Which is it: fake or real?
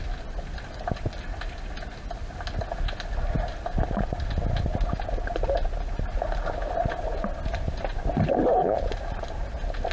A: real